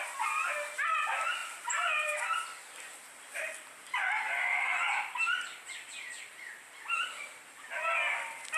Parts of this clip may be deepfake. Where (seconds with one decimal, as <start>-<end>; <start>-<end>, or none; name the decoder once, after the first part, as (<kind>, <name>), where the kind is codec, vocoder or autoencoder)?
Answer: 1.4-3.1 (vocoder, BigVGAN v2); 4.7-7.7